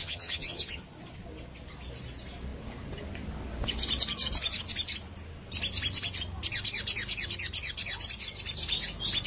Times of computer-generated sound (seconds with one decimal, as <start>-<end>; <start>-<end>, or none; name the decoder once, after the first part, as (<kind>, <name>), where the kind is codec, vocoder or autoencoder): 0.0-0.8 (vocoder, HiFi-GAN)